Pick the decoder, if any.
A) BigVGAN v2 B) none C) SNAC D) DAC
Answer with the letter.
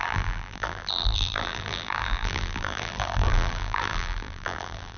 A